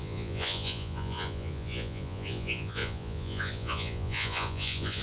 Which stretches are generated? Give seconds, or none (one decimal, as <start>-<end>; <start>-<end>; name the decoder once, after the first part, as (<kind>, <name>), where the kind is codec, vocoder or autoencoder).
0.0-5.0 (vocoder, Vocos)